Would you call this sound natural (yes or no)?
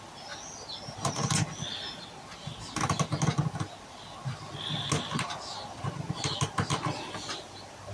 yes